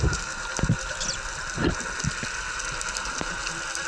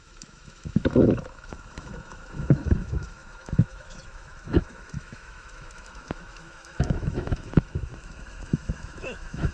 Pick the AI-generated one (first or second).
second